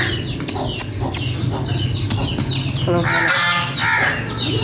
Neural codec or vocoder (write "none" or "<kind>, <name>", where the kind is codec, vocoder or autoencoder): none